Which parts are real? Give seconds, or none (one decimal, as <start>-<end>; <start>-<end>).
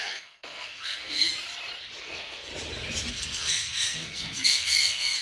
1.3-2.0; 2.5-3.1